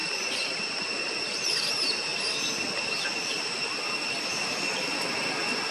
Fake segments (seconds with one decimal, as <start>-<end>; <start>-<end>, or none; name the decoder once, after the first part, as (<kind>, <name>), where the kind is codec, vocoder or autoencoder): 0.0-2.1 (vocoder, BigVGAN v2); 4.6-5.7